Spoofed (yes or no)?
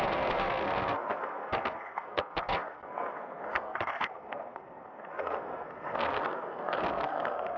yes